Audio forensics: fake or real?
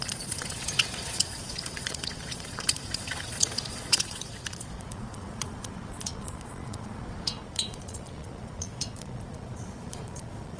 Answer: fake